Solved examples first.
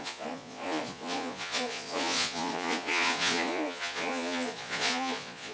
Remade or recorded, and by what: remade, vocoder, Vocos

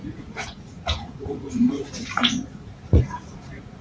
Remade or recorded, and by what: remade, vocoder, Vocos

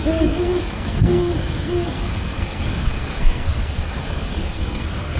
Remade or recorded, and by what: remade, codec, SNAC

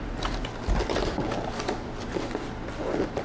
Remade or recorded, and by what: recorded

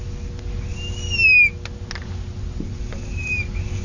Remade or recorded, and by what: recorded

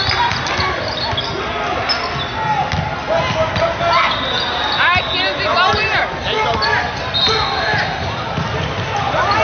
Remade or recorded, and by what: recorded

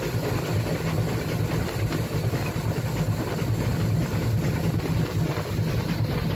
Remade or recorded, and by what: recorded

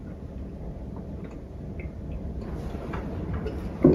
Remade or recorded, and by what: recorded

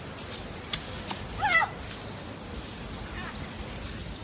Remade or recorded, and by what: remade, vocoder, BigVGAN v2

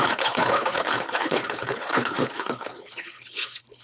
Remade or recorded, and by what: remade, codec, HILCodec